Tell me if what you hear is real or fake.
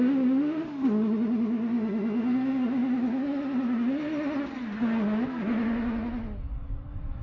real